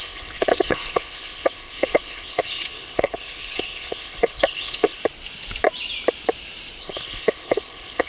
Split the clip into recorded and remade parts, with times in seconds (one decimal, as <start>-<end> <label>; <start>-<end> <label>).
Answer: 0.0-5.0 remade; 5.0-6.8 recorded; 6.8-8.1 remade